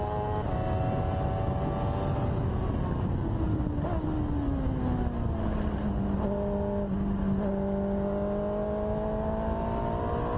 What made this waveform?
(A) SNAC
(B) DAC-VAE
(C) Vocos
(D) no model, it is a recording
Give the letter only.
D